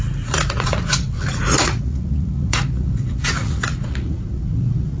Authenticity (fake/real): fake